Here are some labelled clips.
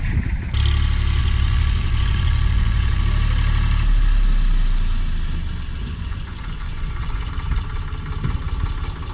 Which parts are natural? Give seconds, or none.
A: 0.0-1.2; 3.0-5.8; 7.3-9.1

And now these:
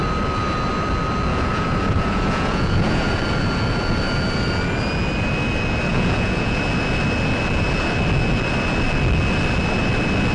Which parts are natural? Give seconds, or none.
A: 0.0-1.3; 3.1-5.9; 6.6-10.3

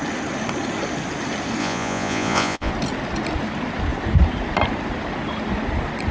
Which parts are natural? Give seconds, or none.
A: 0.0-1.6; 2.7-6.1

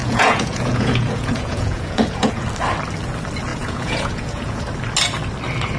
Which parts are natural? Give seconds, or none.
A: 2.4-3.5; 4.6-5.8